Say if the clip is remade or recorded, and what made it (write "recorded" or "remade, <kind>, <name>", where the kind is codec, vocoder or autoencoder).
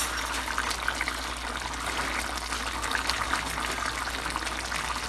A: recorded